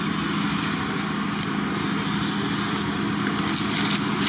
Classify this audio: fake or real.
real